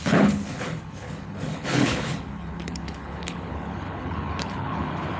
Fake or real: fake